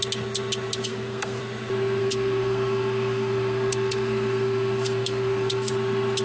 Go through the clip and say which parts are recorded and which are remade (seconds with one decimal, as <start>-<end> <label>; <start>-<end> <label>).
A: 0.0-0.9 recorded; 0.9-1.4 remade; 1.4-2.0 recorded; 2.0-5.7 remade; 5.7-6.2 recorded